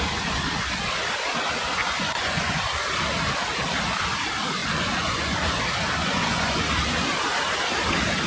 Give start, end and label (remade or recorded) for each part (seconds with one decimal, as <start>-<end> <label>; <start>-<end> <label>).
0.0-1.6 recorded; 1.6-2.6 remade; 2.6-4.6 recorded; 4.6-5.6 remade; 5.6-6.0 recorded; 6.0-6.6 remade; 6.6-8.3 recorded